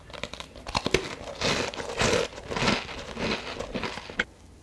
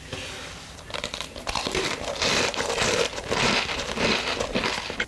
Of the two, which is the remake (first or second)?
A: second